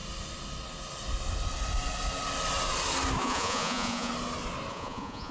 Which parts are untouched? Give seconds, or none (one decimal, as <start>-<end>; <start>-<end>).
0.0-3.2; 4.1-4.7